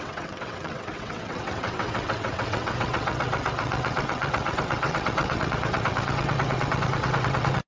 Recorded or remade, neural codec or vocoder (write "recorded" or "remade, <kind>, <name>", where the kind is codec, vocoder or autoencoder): remade, vocoder, WaveNeXt